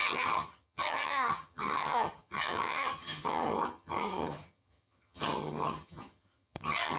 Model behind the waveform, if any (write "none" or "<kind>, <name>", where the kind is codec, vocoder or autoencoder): vocoder, HiFi-GAN